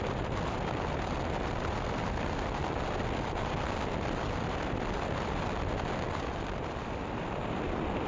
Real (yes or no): yes